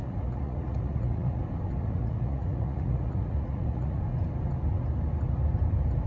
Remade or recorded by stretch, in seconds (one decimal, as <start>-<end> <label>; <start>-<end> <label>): 0.0-1.4 remade; 1.4-1.8 recorded; 1.8-4.0 remade; 4.0-6.1 recorded